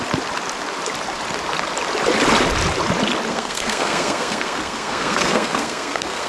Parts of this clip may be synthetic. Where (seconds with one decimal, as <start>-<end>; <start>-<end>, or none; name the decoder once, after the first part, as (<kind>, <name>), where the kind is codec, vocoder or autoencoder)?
3.3-6.3 (codec, SNAC)